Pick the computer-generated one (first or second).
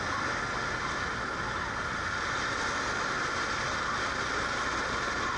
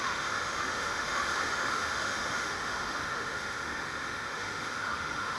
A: second